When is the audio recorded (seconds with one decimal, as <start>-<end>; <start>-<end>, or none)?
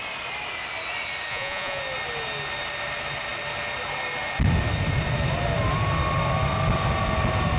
0.0-1.3; 1.8-7.6